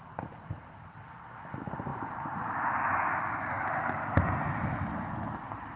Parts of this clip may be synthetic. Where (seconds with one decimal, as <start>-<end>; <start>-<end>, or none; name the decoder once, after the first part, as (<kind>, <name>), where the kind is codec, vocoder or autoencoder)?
none